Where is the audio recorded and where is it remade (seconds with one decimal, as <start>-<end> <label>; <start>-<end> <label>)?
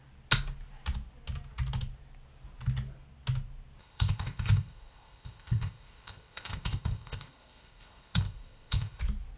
0.0-3.8 recorded; 3.8-9.0 remade; 9.0-9.4 recorded